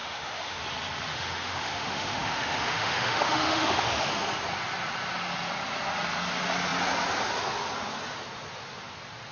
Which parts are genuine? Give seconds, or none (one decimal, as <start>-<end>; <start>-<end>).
0.6-1.1; 4.1-9.3